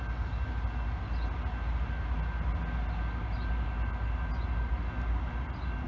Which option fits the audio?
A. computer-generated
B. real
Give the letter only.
B